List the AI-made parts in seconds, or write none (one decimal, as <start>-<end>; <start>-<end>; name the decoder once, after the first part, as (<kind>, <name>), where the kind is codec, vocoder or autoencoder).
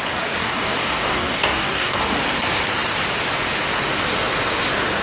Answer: 0.4-2.0 (codec, DAC)